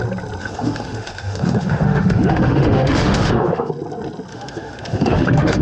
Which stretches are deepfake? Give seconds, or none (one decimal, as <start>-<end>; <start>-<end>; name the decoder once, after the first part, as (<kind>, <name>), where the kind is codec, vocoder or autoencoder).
0.4-3.7 (autoencoder, DAC-VAE); 4.3-5.6